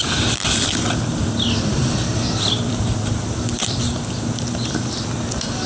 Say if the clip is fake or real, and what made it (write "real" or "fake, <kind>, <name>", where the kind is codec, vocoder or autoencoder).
fake, vocoder, BigVGAN v2